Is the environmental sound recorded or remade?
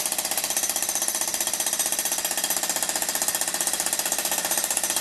remade